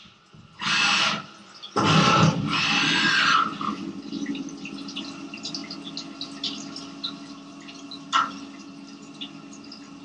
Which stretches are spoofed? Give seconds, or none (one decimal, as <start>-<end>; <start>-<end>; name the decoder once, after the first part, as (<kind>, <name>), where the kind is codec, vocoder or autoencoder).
none